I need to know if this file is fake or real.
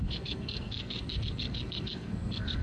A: fake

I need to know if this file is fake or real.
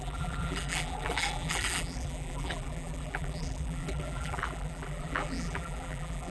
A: fake